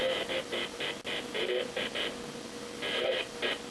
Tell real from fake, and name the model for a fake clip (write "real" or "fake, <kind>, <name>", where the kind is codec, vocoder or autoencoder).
real